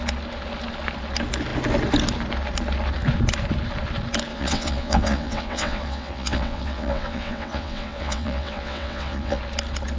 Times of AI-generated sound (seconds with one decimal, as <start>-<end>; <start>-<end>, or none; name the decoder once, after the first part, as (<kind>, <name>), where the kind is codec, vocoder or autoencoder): 4.3-9.4 (vocoder, WaveNeXt)